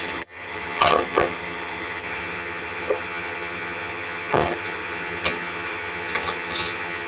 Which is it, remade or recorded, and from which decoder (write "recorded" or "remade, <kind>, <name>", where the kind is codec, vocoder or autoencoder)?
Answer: remade, vocoder, HiFi-GAN